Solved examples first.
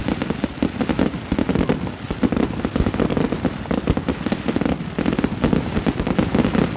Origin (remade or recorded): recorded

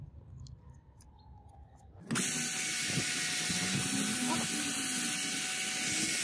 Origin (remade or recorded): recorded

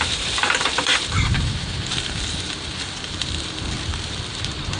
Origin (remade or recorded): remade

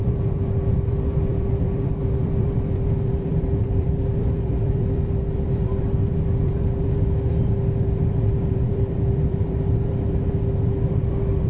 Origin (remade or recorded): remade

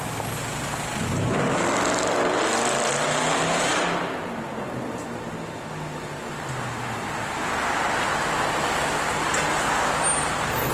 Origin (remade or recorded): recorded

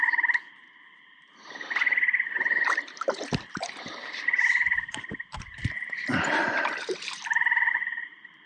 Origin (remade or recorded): remade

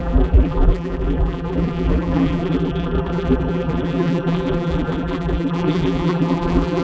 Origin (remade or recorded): remade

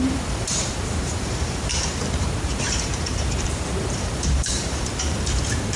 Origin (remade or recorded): remade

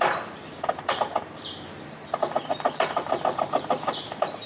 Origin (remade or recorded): remade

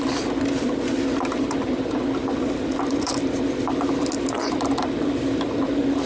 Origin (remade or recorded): remade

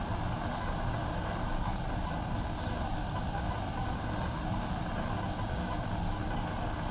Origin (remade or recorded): recorded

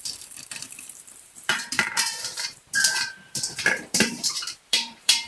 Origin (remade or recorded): remade